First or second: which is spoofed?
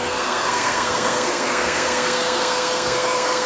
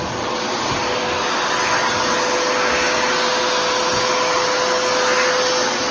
first